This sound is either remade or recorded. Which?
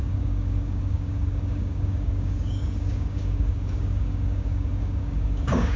remade